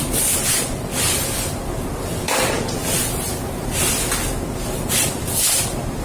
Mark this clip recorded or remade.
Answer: recorded